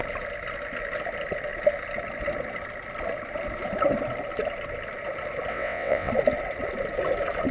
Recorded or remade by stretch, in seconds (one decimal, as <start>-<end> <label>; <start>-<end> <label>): 0.0-5.5 recorded; 5.5-6.1 remade; 6.1-7.5 recorded